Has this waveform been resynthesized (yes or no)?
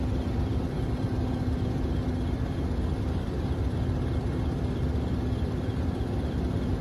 yes